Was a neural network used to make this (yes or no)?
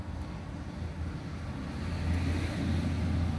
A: no